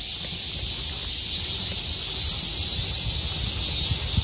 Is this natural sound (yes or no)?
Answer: yes